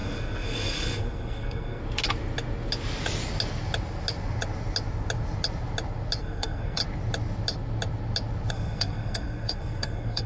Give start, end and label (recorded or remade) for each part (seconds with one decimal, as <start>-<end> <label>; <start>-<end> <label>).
0.0-1.8 remade; 1.8-6.2 recorded; 6.2-6.8 remade; 6.8-8.5 recorded; 8.5-10.3 remade